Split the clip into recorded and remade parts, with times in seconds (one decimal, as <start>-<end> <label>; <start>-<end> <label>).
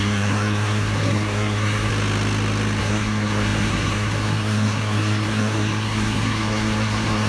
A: 0.0-1.9 remade; 1.9-2.8 recorded; 2.8-7.3 remade